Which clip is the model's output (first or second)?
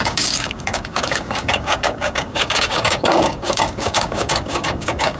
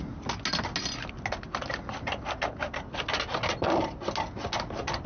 first